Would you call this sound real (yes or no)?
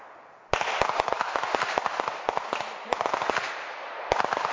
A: yes